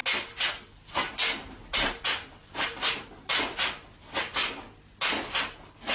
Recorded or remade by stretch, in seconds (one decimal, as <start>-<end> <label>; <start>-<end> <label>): 0.0-5.9 recorded